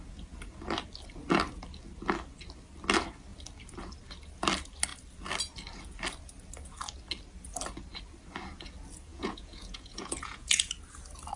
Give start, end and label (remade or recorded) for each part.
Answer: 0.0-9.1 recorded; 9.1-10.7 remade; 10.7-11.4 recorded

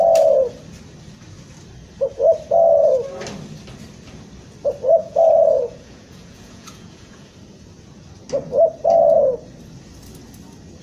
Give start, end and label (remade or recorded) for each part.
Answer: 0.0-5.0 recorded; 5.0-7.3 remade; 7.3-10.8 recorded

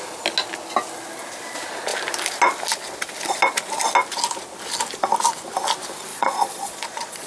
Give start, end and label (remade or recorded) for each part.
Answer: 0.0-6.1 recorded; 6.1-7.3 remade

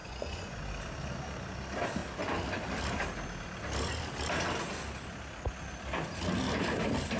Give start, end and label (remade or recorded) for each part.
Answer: 0.0-0.6 remade; 0.6-7.2 recorded

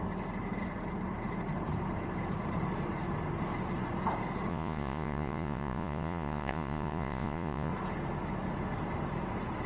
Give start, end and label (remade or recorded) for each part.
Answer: 0.0-4.5 recorded; 4.5-7.7 remade; 7.7-9.7 recorded

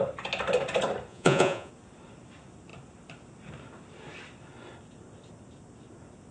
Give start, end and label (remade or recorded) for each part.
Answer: 0.0-1.1 recorded; 1.1-1.7 remade; 1.7-6.3 recorded